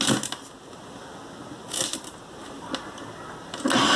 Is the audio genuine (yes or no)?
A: yes